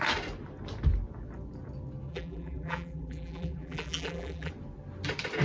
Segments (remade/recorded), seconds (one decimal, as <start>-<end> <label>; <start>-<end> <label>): 0.0-2.1 recorded; 2.1-4.5 remade; 4.5-5.4 recorded